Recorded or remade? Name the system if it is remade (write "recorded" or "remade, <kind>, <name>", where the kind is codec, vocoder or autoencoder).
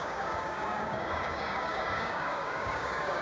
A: remade, codec, DAC